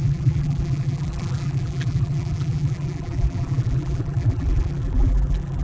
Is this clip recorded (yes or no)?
no